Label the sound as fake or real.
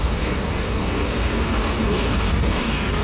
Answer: fake